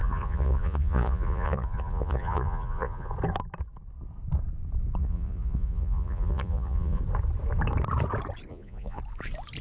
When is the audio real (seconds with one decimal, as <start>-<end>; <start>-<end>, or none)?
3.1-5.0; 7.0-8.5; 9.0-9.6